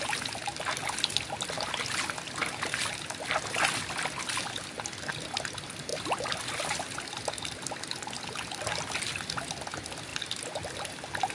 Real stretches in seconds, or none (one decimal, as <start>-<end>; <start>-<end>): 0.0-11.3